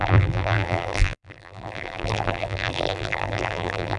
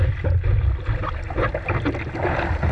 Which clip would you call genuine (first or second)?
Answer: second